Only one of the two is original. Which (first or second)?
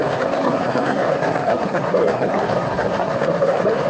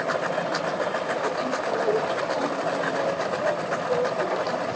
second